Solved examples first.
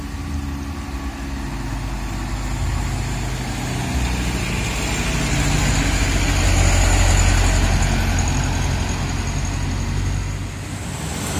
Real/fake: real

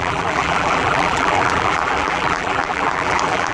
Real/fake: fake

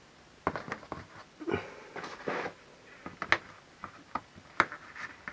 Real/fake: real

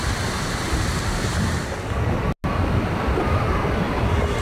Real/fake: real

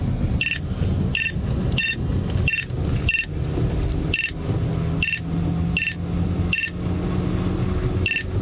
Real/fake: real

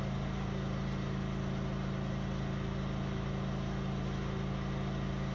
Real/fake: real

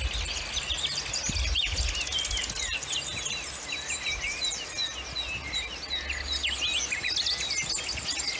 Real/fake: real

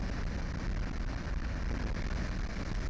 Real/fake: real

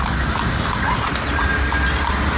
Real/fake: real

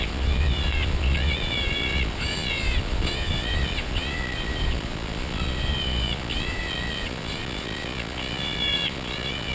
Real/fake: fake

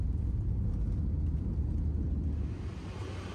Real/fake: real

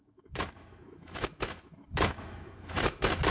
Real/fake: fake